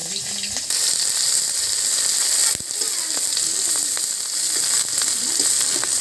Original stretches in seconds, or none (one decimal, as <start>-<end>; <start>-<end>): 0.5-6.0